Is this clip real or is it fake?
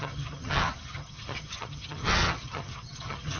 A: fake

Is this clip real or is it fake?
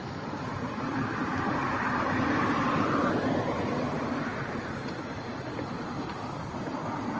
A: real